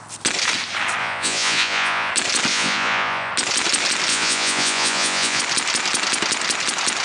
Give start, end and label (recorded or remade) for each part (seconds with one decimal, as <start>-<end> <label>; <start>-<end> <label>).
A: 0.0-1.0 recorded; 1.0-2.1 remade; 2.1-2.5 recorded; 2.5-3.3 remade; 3.3-4.1 recorded; 4.1-5.4 remade; 5.4-7.0 recorded